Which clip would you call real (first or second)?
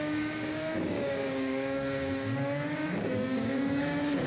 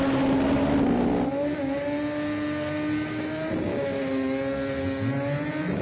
second